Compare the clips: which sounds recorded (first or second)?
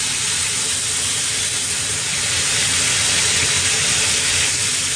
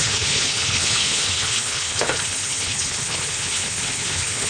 first